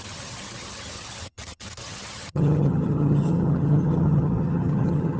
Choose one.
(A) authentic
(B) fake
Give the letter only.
B